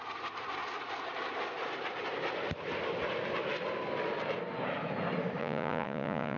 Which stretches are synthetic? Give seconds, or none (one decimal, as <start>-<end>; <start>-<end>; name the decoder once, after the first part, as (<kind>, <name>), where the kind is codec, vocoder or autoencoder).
5.4-6.4 (vocoder, Vocos)